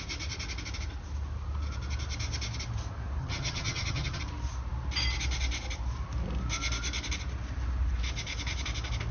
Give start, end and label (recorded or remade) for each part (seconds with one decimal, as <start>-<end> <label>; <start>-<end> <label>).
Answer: 0.0-3.2 recorded; 3.2-4.2 remade; 4.2-9.1 recorded